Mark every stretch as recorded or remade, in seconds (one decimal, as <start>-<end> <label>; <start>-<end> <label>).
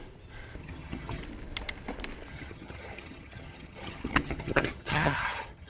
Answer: 0.0-0.6 recorded; 0.6-1.2 remade; 1.2-2.3 recorded; 2.3-5.7 remade